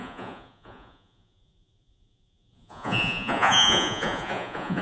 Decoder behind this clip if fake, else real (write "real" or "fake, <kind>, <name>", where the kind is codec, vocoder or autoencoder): fake, vocoder, Vocos